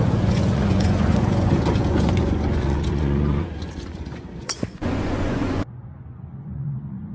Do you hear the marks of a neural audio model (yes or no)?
yes